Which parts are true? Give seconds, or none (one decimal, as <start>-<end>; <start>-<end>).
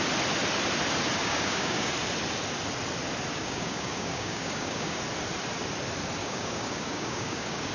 0.0-1.2; 1.9-3.3; 5.0-6.2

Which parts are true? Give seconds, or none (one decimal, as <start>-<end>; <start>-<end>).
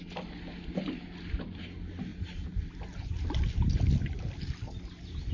0.0-5.3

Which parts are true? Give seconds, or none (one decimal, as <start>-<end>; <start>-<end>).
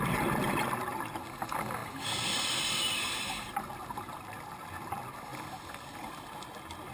0.0-6.9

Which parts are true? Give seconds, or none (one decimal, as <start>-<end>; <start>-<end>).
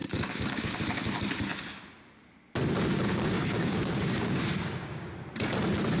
0.8-3.4; 5.1-6.0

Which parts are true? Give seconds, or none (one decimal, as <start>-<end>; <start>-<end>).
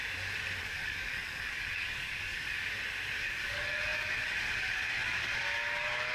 0.0-0.6; 2.6-3.2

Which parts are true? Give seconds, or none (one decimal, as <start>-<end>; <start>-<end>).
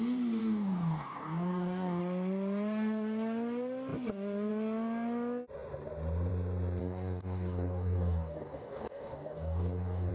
0.0-0.4; 2.0-6.8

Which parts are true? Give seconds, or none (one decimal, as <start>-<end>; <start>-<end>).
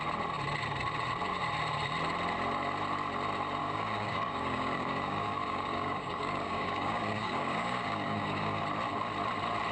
0.0-3.6; 8.6-9.7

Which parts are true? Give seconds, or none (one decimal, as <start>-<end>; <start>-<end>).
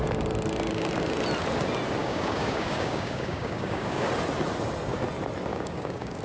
0.0-2.0; 4.1-5.5